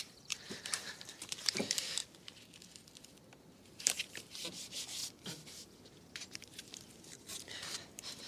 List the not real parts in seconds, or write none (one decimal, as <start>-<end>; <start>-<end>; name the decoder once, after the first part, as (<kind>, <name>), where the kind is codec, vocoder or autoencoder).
0.0-2.0 (vocoder, BigVGAN v2); 3.0-5.0; 6.0-8.3

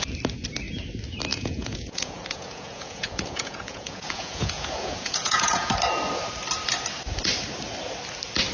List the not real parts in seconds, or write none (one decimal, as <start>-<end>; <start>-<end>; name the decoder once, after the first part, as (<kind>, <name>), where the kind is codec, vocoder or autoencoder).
1.3-5.7 (vocoder, Vocos)

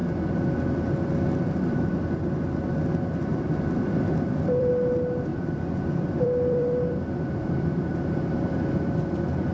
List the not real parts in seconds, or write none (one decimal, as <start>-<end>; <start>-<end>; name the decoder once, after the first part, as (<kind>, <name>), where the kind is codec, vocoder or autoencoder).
3.3-4.7 (vocoder, BigVGAN v2); 5.3-9.5

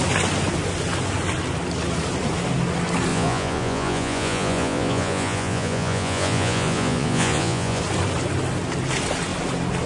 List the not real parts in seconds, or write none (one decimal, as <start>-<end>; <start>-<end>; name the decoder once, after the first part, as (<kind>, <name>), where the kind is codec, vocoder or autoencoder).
3.1-7.8 (vocoder, Vocos)

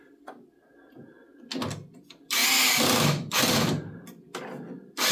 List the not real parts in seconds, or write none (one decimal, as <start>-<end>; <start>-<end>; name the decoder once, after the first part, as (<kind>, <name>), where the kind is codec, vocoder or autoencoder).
none

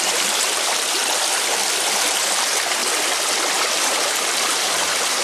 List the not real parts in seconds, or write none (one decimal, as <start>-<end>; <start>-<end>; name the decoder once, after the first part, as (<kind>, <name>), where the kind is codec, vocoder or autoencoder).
0.0-1.0 (vocoder, BigVGAN v2); 1.8-2.8; 3.8-5.2